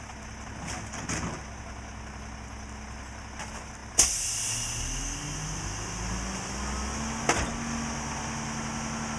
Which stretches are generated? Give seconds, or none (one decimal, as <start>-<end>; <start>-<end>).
none